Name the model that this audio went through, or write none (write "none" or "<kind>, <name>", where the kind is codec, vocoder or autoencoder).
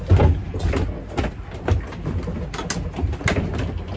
none